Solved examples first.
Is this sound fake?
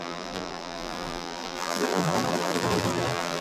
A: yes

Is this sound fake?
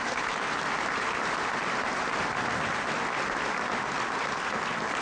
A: no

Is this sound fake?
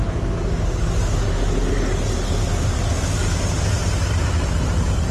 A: no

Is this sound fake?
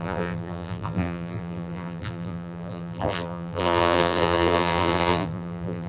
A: yes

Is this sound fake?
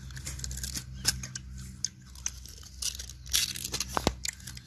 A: no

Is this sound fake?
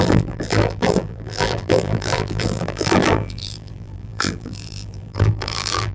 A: yes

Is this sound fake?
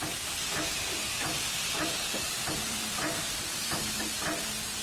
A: yes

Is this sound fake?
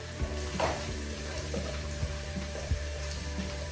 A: yes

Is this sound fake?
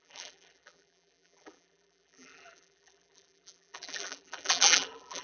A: yes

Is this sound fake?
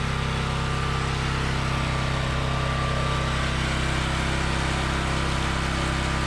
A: no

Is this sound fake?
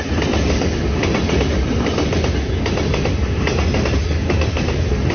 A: no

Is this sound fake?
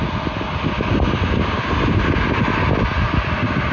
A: no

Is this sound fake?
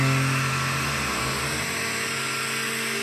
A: no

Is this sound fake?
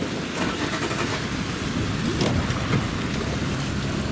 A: no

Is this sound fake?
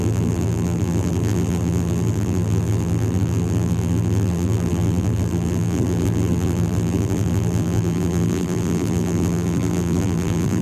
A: yes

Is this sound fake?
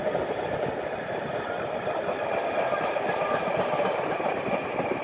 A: yes